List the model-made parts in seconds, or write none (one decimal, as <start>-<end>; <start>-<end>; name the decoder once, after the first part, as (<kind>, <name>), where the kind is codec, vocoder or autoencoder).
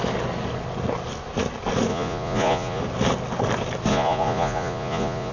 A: 1.9-2.8 (vocoder, Vocos); 3.9-5.3